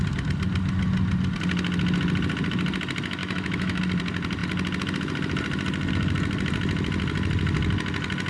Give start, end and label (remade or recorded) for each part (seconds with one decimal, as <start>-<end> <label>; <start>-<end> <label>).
0.0-3.2 recorded; 3.2-3.8 remade; 3.8-8.3 recorded